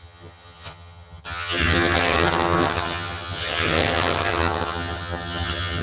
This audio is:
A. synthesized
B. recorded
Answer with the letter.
A